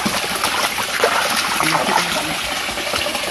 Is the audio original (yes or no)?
yes